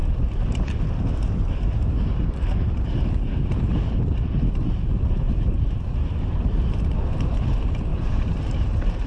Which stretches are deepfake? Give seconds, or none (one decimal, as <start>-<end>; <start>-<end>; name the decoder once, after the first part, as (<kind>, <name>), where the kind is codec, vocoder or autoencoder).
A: 6.0-6.8 (vocoder, BigVGAN v2); 7.9-9.1